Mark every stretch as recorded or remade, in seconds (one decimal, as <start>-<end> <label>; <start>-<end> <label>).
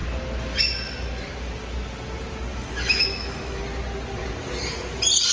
0.0-2.5 recorded; 2.5-3.6 remade; 3.6-5.3 recorded